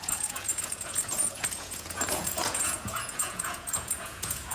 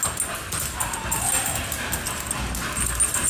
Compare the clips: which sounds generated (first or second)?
first